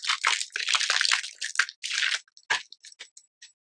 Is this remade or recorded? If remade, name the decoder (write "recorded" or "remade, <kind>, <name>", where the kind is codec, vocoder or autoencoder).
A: recorded